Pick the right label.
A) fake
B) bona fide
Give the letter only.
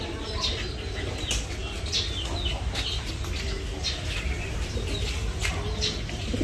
B